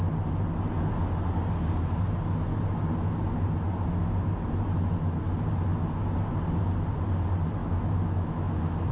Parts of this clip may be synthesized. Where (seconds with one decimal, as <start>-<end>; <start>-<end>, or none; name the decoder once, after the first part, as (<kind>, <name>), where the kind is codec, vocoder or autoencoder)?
7.6-8.9 (autoencoder, DAC-VAE)

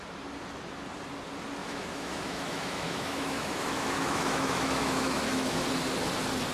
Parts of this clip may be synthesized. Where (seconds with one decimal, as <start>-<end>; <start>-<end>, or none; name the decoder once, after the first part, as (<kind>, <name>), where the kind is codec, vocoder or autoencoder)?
1.6-5.5 (autoencoder, DAC-VAE)